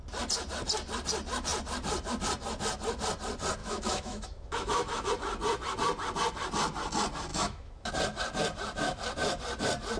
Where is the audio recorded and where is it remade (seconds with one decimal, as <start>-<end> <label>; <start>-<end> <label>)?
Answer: 0.0-3.6 recorded; 3.6-5.1 remade; 5.1-7.3 recorded; 7.3-7.9 remade; 7.9-10.0 recorded